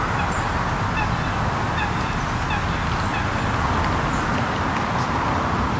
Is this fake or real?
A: real